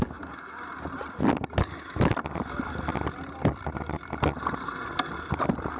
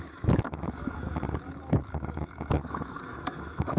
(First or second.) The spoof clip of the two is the second